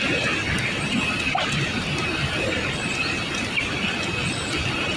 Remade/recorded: recorded